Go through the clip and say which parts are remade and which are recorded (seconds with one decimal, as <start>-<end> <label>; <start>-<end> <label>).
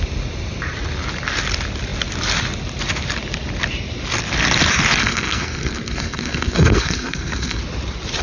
0.0-5.0 recorded; 5.0-7.6 remade; 7.6-8.2 recorded